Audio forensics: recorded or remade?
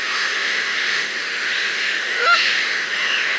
remade